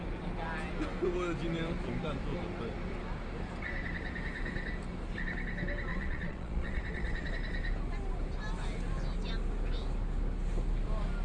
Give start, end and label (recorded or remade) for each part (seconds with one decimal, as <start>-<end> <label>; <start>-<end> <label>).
0.0-5.9 recorded; 5.9-7.3 remade; 7.3-11.2 recorded